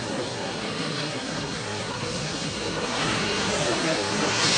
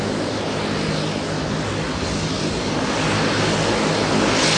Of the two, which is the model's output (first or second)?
first